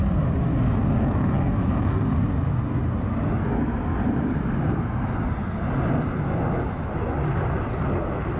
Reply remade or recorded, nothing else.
recorded